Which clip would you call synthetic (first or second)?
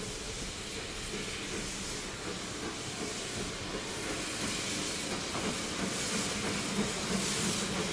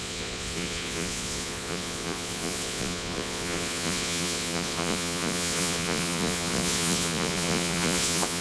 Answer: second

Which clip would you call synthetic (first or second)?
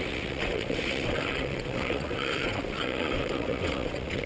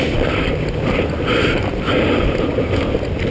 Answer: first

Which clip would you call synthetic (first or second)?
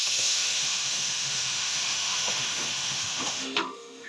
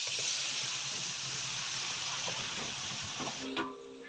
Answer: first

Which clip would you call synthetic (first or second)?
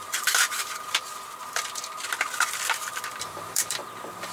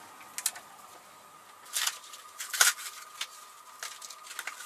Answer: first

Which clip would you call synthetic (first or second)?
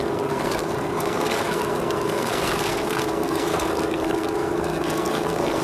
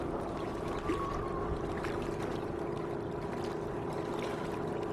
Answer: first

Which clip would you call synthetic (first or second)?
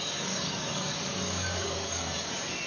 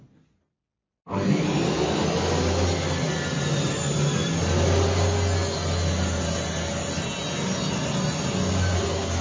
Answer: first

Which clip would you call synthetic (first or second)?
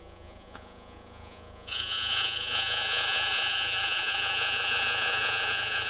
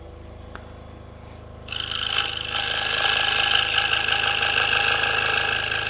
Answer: first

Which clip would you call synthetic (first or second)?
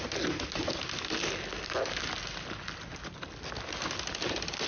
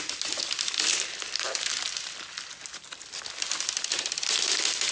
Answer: second